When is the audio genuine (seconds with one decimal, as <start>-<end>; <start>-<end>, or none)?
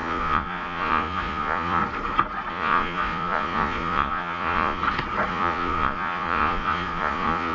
1.8-2.5; 4.8-5.3